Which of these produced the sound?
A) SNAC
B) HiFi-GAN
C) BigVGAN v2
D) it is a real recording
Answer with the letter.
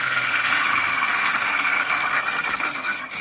A